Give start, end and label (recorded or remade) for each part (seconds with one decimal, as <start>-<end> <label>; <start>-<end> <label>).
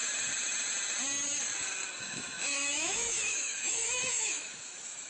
0.0-2.0 recorded; 2.0-5.1 remade